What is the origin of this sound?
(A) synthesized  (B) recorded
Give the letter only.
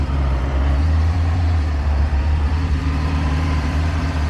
A